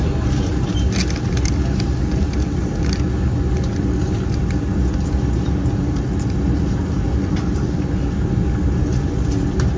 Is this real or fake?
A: real